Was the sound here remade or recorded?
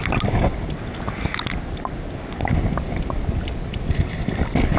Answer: recorded